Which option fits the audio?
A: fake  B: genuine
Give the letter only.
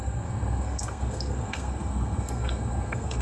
A